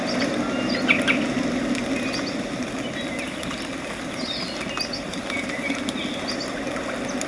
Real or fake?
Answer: real